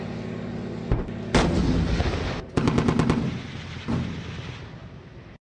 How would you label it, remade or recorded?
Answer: recorded